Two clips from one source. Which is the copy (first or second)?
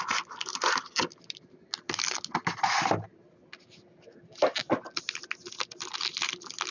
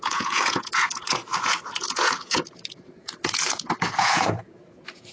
second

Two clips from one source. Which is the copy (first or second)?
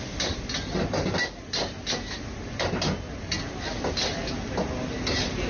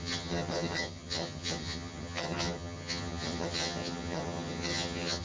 second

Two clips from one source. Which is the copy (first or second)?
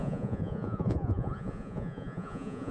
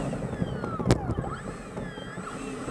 first